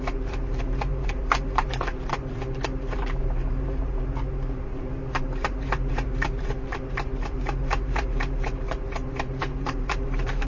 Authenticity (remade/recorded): remade